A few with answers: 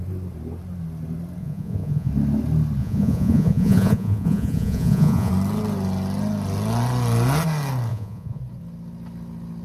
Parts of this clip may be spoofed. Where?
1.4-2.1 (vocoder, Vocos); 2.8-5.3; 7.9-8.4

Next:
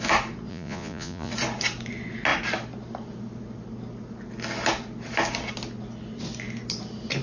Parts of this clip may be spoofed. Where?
0.5-1.3 (vocoder, Vocos)

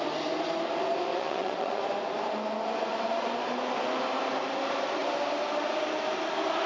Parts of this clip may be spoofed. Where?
1.1-1.8 (vocoder, Vocos)

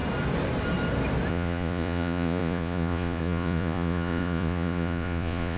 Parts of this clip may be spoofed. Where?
1.3-5.6 (vocoder, Vocos)